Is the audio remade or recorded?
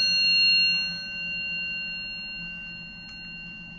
recorded